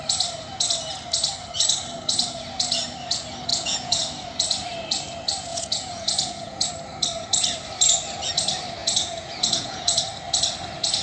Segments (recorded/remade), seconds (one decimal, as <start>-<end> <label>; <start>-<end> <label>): 0.0-3.5 recorded; 3.5-4.0 remade; 4.0-5.5 recorded; 5.5-6.7 remade; 6.7-8.8 recorded; 8.8-10.0 remade; 10.0-11.0 recorded